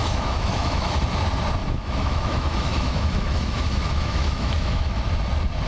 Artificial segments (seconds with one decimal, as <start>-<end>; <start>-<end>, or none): 0.0-1.0; 1.6-5.0